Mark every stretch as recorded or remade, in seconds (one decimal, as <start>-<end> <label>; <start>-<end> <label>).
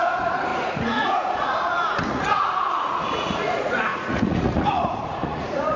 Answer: 0.0-5.8 remade